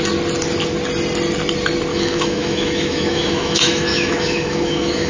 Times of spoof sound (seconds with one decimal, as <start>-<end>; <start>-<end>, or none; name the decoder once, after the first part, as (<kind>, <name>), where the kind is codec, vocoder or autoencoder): 1.9-5.1 (autoencoder, DAC-VAE)